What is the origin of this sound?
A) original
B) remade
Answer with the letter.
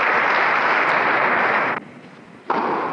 A